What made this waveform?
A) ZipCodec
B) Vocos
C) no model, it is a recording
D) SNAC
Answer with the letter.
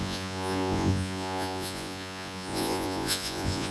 B